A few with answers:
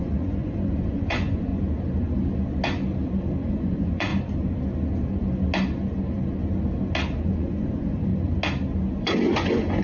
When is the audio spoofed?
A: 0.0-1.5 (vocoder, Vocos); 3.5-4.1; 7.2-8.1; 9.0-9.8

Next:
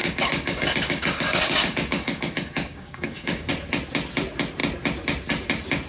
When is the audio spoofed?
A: 0.0-3.5 (codec, DAC)

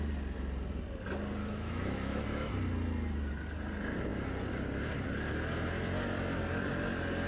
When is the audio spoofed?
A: 1.4-2.5 (autoencoder, DAC-VAE)

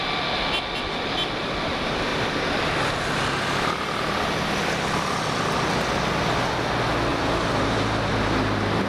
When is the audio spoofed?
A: 2.1-2.6 (vocoder, BigVGAN v2); 7.1-8.1

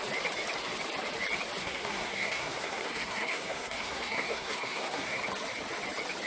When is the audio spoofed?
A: 1.6-5.2 (codec, SNAC)

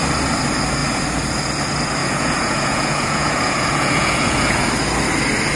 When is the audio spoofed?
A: 2.0-4.7 (vocoder, Vocos)

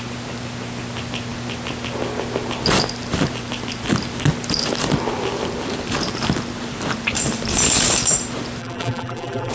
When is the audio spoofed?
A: 8.6-9.5 (vocoder, BigVGAN v2)

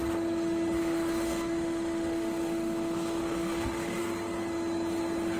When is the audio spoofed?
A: 0.8-4.0 (autoencoder, DAC-VAE)